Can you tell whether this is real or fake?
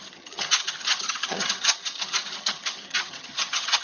fake